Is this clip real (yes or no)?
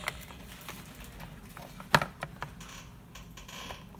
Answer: yes